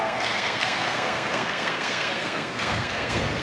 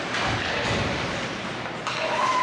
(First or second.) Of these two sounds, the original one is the second